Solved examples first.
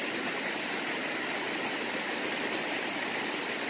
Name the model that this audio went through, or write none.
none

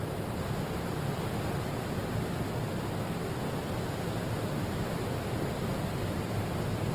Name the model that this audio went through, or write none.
none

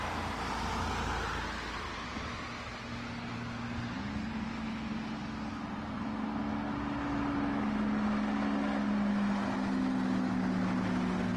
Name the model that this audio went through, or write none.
none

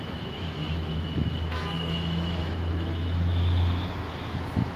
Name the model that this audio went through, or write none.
autoencoder, DAC-VAE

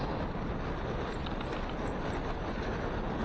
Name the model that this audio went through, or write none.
none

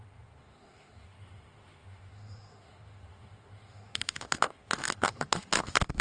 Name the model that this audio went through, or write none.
autoencoder, DAC-VAE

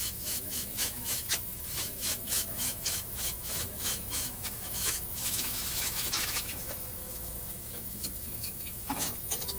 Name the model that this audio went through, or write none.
autoencoder, DAC-VAE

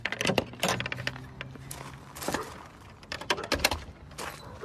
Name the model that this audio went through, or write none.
none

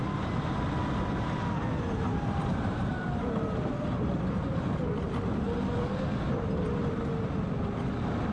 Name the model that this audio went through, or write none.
none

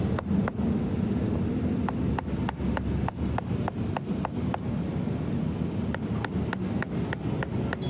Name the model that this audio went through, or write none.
none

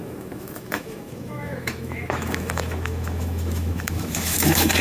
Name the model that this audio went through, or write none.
autoencoder, DAC-VAE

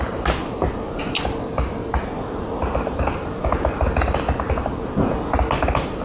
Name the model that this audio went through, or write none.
none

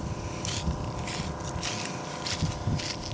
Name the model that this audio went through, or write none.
none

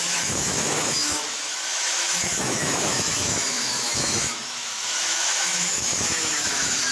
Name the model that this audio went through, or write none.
autoencoder, DAC-VAE